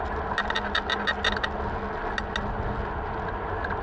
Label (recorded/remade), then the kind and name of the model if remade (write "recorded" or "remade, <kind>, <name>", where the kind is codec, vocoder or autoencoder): recorded